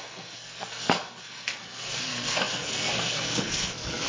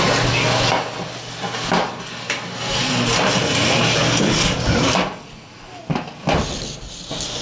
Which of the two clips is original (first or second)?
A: second